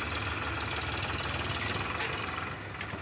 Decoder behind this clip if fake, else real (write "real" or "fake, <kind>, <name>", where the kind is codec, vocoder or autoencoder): real